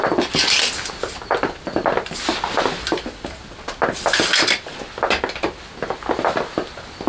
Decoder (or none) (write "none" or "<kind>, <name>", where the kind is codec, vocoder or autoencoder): none